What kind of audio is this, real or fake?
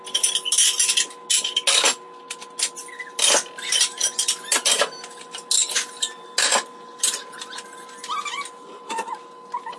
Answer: real